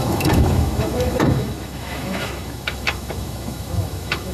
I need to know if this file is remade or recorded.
remade